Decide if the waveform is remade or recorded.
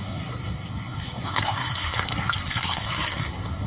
remade